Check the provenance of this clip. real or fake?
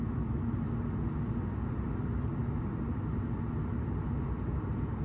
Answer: real